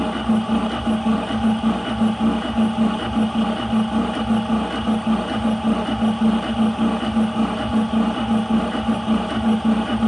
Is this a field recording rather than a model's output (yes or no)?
yes